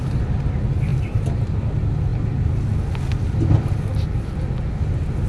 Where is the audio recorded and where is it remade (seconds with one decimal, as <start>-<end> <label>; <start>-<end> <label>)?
0.0-5.3 recorded